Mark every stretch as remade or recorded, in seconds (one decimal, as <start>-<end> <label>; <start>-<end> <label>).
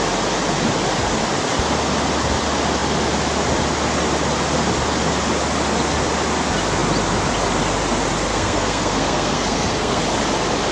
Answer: 0.0-8.3 recorded; 8.3-10.0 remade; 10.0-10.7 recorded